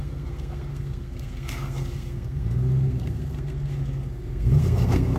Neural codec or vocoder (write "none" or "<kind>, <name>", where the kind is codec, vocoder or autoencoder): codec, SNAC